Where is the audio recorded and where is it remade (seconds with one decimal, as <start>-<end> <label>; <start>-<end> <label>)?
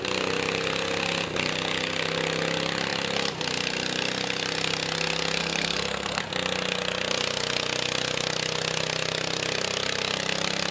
0.0-5.4 recorded; 5.4-6.2 remade; 6.2-10.7 recorded